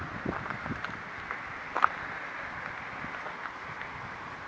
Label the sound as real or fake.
real